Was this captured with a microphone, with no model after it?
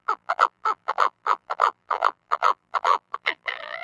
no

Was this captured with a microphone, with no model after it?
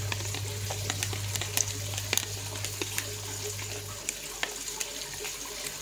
yes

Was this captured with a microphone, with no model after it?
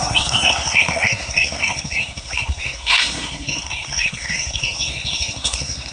no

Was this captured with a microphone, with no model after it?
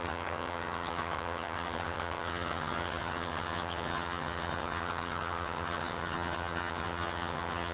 no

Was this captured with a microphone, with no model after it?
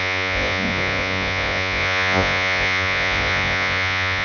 no